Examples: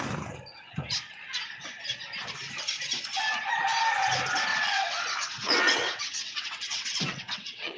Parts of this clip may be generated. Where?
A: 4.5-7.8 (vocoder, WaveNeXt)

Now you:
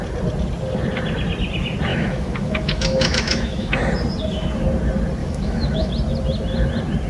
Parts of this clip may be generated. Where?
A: 1.9-3.7 (autoencoder, DAC-VAE); 5.2-5.9